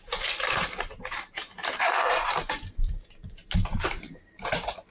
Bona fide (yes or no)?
no